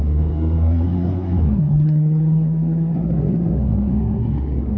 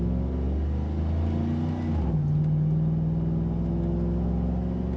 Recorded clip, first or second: second